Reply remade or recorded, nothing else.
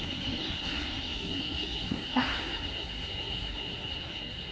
remade